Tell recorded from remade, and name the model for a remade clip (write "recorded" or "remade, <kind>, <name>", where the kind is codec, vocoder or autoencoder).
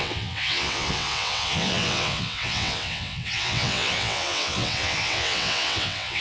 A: remade, vocoder, WaveNeXt